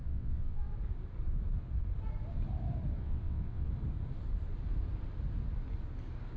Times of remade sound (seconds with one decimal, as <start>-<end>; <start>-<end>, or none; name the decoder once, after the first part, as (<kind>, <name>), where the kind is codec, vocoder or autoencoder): 0.0-0.7 (vocoder, WaveNeXt); 3.0-3.7